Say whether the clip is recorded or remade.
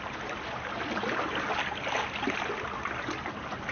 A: recorded